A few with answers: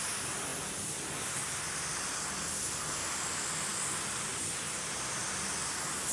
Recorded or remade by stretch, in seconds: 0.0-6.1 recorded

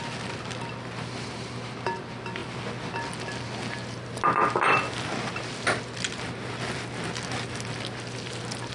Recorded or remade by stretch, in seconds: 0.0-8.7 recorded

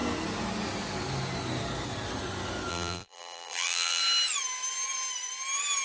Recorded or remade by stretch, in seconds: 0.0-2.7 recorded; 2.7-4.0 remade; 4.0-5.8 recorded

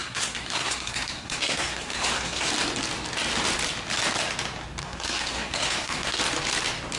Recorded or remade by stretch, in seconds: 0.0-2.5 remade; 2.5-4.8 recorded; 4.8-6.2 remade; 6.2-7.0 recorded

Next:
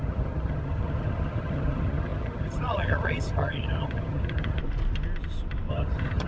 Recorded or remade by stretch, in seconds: 0.0-4.6 remade; 4.6-5.7 recorded; 5.7-6.3 remade

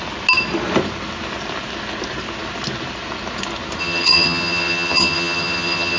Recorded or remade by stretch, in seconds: 0.0-3.8 recorded; 3.8-6.0 remade

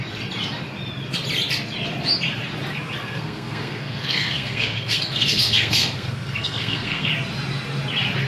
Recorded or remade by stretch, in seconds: 0.0-3.0 recorded; 3.0-7.1 remade; 7.1-8.3 recorded